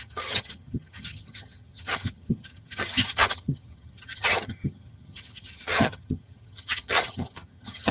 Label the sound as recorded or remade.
remade